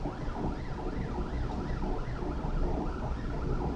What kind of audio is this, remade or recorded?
recorded